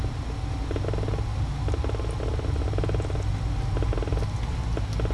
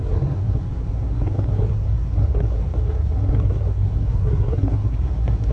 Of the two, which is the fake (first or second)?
second